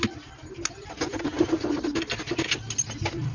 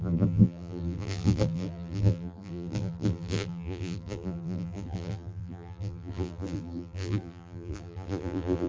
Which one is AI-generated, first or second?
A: second